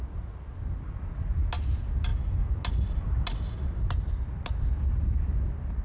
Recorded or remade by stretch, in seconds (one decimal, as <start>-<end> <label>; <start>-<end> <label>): 0.0-5.8 recorded